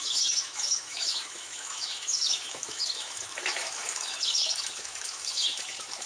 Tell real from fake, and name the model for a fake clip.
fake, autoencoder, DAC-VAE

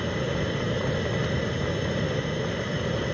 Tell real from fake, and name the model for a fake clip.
real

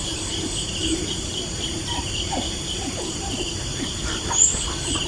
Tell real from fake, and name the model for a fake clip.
fake, vocoder, BigVGAN v2